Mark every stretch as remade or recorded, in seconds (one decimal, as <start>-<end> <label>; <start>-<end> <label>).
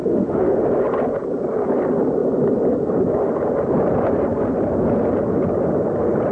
0.0-0.6 remade; 0.6-6.3 recorded